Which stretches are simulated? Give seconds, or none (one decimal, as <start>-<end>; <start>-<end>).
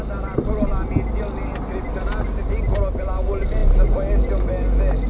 none